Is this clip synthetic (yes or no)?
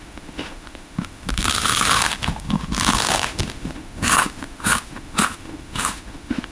yes